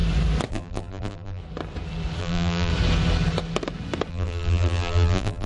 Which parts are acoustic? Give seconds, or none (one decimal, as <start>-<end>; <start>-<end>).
0.0-0.5; 1.4-2.2; 2.7-4.1